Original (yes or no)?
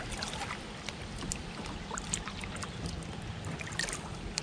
yes